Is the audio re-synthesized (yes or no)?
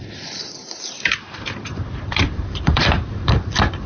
yes